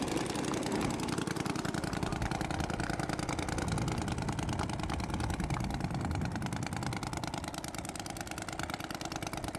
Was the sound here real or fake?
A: real